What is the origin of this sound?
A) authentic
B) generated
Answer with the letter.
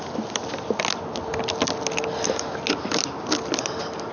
A